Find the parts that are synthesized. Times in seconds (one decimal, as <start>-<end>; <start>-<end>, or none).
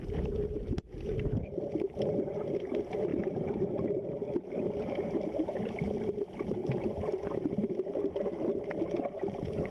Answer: 3.1-6.0; 6.6-8.1